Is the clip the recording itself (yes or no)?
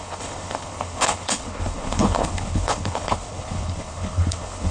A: no